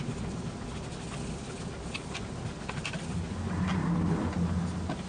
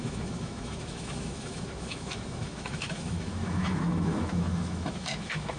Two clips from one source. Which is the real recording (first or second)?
first